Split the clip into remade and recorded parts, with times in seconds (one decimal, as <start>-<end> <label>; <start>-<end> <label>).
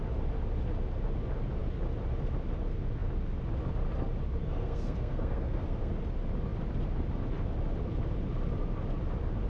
0.0-4.4 recorded; 4.4-5.9 remade; 5.9-9.5 recorded